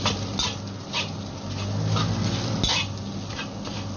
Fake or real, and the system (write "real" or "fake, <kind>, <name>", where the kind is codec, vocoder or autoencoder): real